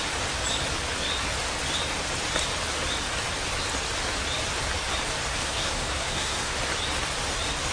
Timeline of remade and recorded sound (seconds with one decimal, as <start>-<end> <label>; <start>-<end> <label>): 0.0-5.3 recorded; 5.3-6.5 remade; 6.5-7.7 recorded